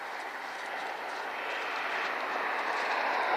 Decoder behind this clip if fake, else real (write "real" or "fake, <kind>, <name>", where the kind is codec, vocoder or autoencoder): real